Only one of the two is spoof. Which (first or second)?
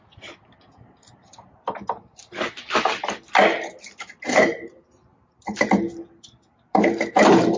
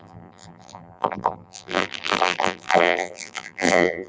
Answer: second